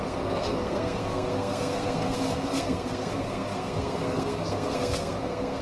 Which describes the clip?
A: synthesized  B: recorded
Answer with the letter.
A